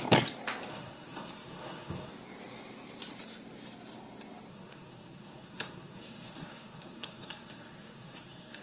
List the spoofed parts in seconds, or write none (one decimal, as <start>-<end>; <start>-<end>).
0.7-2.1; 4.5-8.6